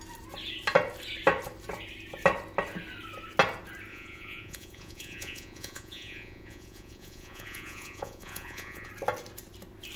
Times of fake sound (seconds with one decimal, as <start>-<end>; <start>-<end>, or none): 3.9-8.9